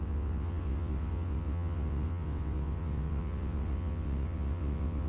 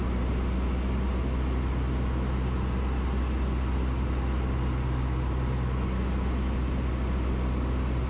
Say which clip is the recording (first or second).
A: second